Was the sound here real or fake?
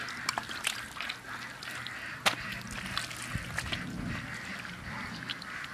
real